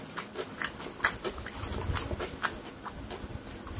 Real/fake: real